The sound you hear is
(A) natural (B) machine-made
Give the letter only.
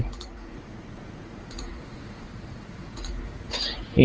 B